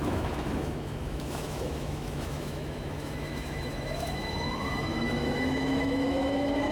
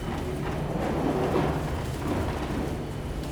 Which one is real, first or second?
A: second